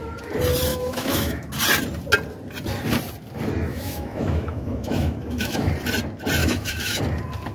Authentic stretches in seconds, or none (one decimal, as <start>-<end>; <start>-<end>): 0.0-0.7; 1.5-3.7; 5.7-6.4; 7.0-7.5